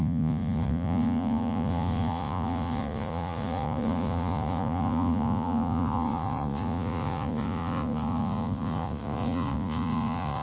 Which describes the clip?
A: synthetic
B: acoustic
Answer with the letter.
A